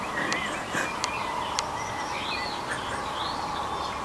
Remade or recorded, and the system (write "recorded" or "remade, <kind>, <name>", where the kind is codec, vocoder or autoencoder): recorded